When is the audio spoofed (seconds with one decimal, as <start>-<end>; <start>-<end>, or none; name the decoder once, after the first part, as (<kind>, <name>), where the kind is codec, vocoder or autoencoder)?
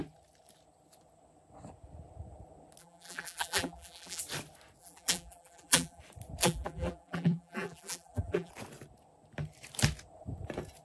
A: 2.8-4.2 (vocoder, BigVGAN v2); 4.8-6.0; 6.4-8.5